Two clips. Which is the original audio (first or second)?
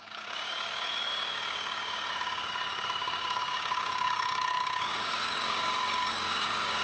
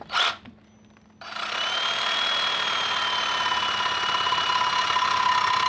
second